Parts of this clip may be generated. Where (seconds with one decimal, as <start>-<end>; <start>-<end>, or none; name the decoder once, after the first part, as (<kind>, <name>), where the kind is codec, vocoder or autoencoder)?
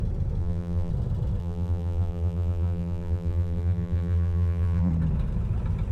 0.4-0.9 (vocoder, BigVGAN v2); 1.4-4.9